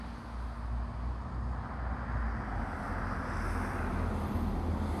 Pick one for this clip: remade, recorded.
recorded